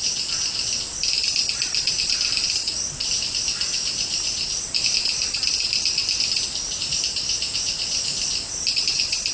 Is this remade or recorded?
recorded